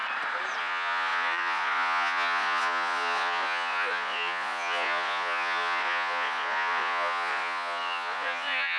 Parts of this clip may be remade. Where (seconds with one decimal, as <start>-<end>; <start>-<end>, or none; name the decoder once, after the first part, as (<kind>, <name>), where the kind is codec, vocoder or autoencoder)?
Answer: 0.6-8.8 (vocoder, Vocos)